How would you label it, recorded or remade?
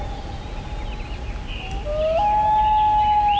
recorded